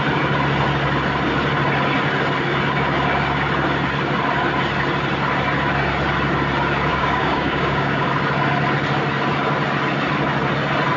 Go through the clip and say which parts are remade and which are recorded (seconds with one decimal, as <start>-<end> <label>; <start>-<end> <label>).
0.0-6.9 recorded; 6.9-8.1 remade; 8.1-11.0 recorded